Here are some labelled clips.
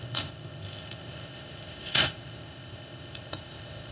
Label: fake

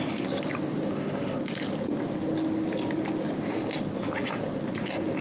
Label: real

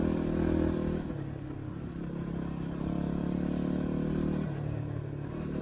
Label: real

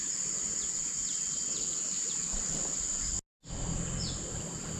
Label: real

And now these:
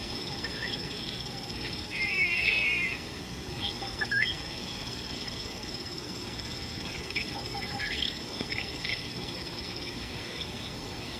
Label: fake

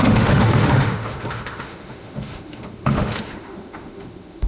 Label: fake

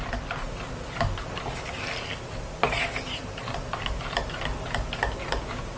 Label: real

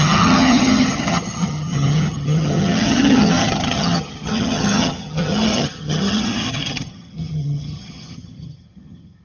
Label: fake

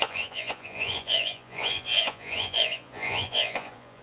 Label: fake